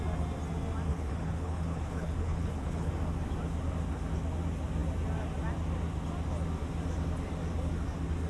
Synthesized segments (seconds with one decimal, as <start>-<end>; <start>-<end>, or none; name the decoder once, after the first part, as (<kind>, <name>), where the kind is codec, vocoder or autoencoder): 0.9-2.9 (codec, HILCodec)